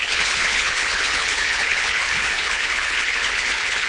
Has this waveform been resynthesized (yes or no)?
yes